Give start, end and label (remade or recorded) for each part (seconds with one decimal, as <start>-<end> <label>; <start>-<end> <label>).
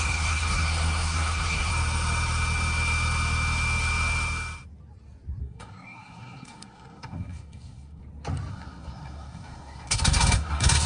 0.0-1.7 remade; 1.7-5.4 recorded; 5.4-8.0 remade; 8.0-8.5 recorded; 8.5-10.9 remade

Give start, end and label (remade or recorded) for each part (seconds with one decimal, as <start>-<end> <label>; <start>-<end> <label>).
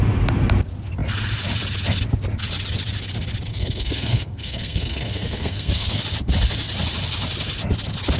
0.0-3.5 recorded; 3.5-6.0 remade; 6.0-8.2 recorded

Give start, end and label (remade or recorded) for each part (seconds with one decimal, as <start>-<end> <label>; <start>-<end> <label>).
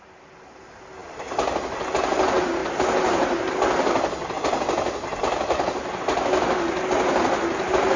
0.0-8.0 recorded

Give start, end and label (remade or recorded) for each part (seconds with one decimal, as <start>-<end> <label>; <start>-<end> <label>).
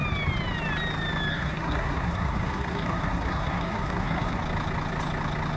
0.0-1.3 recorded; 1.3-4.4 remade; 4.4-5.6 recorded